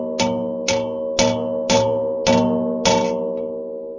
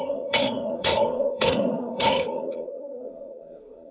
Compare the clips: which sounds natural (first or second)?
first